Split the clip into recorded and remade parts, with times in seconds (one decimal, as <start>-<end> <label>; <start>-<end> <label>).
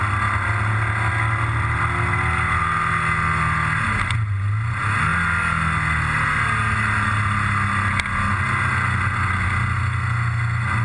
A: 0.0-10.8 recorded